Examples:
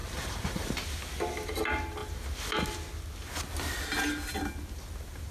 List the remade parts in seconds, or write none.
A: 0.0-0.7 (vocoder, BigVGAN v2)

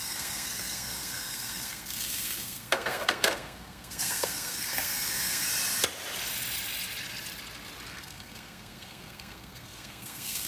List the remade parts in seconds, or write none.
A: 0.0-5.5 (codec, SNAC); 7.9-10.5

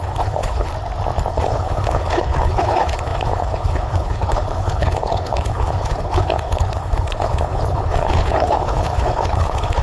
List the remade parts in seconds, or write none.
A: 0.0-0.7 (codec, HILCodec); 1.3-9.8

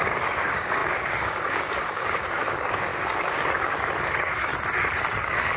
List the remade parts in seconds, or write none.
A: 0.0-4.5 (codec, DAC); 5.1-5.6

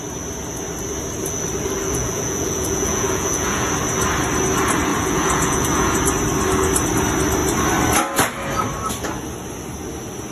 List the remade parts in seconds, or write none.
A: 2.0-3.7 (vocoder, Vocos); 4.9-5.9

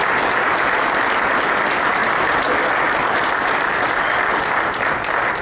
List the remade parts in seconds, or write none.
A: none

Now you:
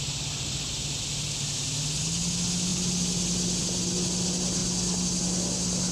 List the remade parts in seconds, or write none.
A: 2.7-3.6 (vocoder, BigVGAN v2)